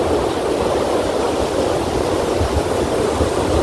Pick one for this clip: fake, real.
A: real